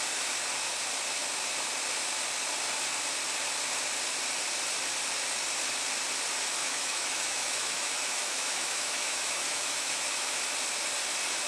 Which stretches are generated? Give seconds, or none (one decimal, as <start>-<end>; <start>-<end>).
6.6-10.4